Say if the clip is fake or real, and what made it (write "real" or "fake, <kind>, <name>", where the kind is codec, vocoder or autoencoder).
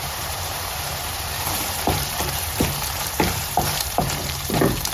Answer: fake, vocoder, BigVGAN v2